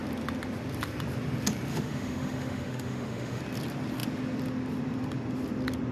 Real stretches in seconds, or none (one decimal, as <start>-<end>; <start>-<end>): 0.0-1.7; 3.4-5.9

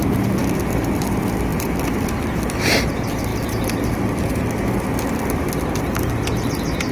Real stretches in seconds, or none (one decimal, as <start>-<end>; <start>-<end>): 0.0-6.9